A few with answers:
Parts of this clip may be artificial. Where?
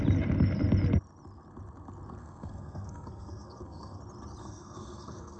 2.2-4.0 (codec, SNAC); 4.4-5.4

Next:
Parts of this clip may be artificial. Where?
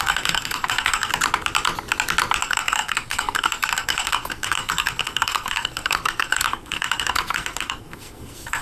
0.0-1.1 (codec, SNAC); 2.4-8.6